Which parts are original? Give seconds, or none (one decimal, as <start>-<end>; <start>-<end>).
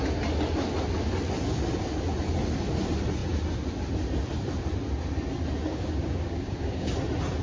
0.0-5.7; 6.9-7.4